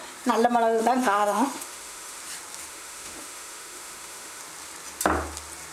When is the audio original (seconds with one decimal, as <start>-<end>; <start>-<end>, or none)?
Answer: 0.0-1.0; 2.2-2.7; 4.4-5.7